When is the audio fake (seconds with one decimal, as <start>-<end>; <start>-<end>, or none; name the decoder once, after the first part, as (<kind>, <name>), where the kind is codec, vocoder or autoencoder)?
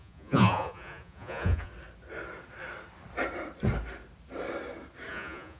0.0-1.7 (vocoder, Vocos); 5.1-5.6